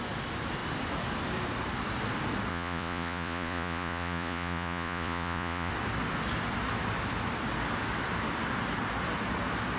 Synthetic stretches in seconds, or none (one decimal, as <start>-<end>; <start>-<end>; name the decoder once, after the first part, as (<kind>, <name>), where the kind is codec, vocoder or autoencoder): 2.5-5.7 (vocoder, Vocos)